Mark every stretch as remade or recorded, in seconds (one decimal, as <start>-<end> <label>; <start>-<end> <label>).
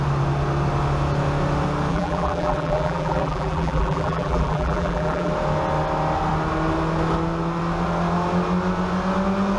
0.0-1.9 recorded; 1.9-5.3 remade; 5.3-9.6 recorded